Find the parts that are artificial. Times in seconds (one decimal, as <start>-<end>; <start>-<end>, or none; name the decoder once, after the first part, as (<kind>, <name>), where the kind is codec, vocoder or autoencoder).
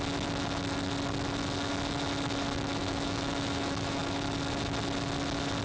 2.8-4.0 (autoencoder, DAC-VAE)